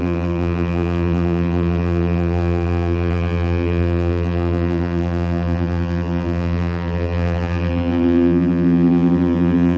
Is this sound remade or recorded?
remade